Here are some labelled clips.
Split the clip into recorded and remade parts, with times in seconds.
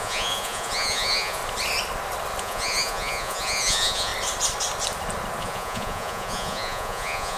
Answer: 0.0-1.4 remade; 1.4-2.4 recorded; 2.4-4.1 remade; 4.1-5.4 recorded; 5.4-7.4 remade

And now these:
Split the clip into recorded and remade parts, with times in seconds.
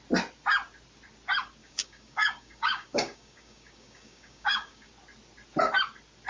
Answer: 0.0-1.6 recorded; 1.6-4.9 remade; 4.9-6.3 recorded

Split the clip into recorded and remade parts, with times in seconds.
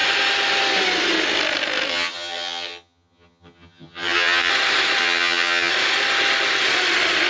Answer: 0.0-1.9 recorded; 1.9-4.5 remade; 4.5-5.0 recorded; 5.0-5.7 remade; 5.7-7.3 recorded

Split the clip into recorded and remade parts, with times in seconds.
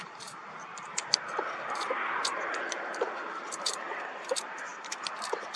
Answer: 0.0-0.4 remade; 0.4-2.3 recorded; 2.3-5.6 remade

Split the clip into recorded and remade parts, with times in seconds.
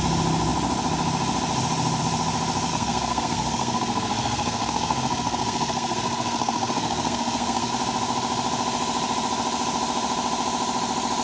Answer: 0.0-2.7 recorded; 2.7-7.7 remade; 7.7-11.2 recorded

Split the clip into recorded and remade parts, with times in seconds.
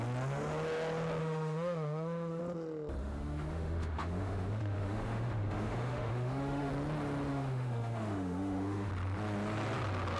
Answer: 0.0-1.2 recorded; 1.2-2.4 remade; 2.4-3.0 recorded; 3.0-6.7 remade; 6.7-7.3 recorded; 7.3-8.9 remade; 8.9-10.2 recorded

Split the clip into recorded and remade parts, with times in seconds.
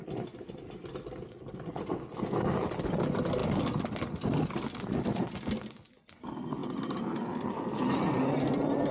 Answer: 0.0-8.9 recorded